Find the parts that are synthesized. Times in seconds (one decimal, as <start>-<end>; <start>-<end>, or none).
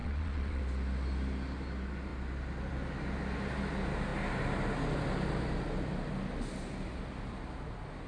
0.0-0.6